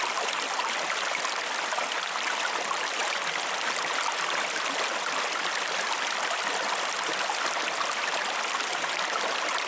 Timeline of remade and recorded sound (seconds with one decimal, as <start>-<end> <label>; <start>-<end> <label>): 0.0-9.7 recorded

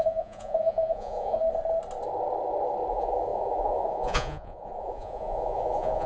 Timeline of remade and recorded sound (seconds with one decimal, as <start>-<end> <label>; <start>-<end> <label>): 0.0-1.4 remade; 1.4-2.9 recorded; 2.9-6.1 remade

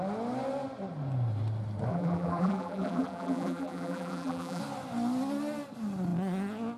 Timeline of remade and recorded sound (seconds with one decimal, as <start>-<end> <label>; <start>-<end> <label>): 0.0-1.9 recorded; 1.9-4.6 remade; 4.6-6.8 recorded

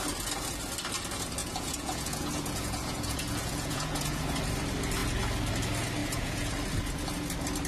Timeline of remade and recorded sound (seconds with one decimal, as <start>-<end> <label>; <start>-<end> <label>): 0.0-1.4 recorded; 1.4-4.2 remade; 4.2-6.0 recorded; 6.0-6.5 remade; 6.5-7.7 recorded

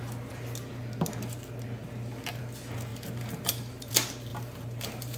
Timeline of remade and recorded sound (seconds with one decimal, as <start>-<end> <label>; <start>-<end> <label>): 0.0-2.9 recorded; 2.9-3.9 remade; 3.9-4.3 recorded; 4.3-5.2 remade